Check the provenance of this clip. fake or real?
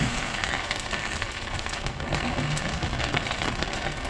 fake